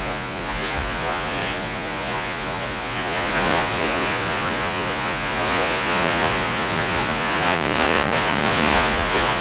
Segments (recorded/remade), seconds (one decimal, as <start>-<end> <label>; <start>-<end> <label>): 0.0-9.4 remade